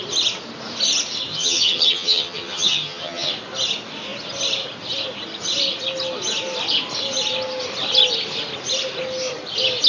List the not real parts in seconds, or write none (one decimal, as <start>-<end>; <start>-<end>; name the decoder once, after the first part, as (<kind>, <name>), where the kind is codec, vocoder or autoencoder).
1.3-3.3 (vocoder, HiFi-GAN)